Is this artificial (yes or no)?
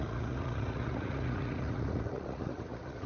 yes